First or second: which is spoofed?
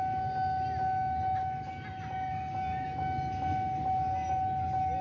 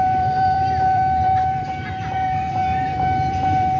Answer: second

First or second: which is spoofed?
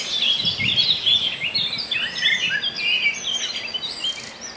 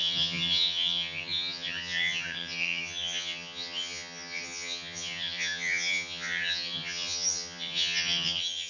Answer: second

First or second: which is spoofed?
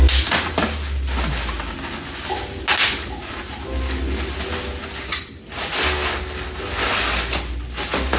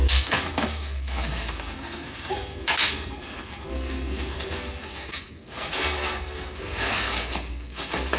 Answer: second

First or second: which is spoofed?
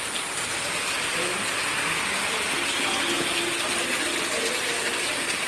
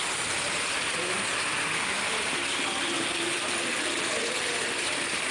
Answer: second